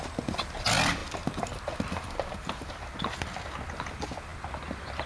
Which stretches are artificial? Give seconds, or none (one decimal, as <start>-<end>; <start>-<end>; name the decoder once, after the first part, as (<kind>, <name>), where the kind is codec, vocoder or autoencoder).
none